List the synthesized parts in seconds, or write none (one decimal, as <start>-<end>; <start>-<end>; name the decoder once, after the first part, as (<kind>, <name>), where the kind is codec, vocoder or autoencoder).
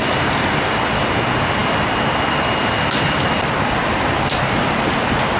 none